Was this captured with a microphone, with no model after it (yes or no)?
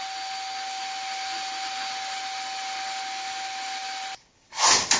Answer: yes